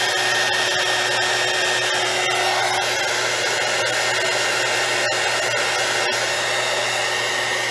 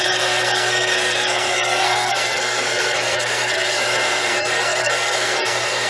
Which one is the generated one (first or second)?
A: second